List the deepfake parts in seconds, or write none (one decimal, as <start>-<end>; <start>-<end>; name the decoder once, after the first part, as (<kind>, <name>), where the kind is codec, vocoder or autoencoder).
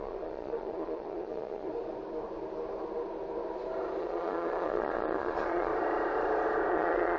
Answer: 0.0-1.7 (vocoder, Vocos); 4.0-5.7; 6.7-7.2